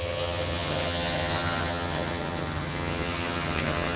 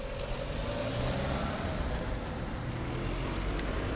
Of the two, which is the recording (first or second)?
second